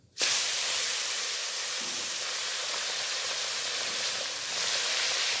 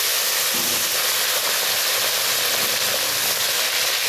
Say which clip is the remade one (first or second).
first